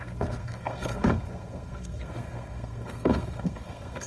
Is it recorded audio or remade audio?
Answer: remade